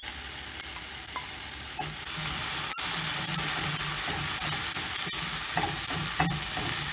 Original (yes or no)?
yes